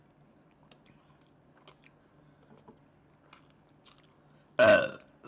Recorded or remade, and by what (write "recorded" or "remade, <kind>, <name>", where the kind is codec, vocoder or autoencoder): recorded